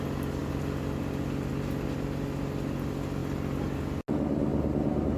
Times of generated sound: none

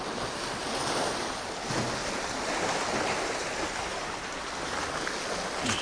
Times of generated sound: none